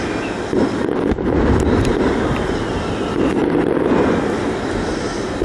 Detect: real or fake fake